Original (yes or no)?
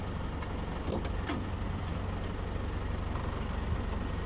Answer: yes